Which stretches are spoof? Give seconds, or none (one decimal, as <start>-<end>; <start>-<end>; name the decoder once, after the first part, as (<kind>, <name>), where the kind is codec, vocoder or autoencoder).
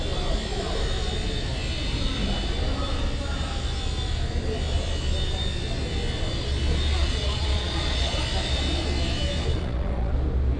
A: 7.0-8.2 (vocoder, Vocos); 9.5-10.1